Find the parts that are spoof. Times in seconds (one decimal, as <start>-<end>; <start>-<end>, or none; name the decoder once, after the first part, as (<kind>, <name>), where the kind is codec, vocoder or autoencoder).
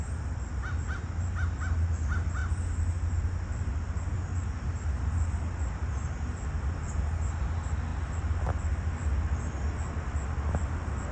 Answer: none